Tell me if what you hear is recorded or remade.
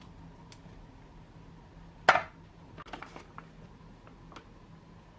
recorded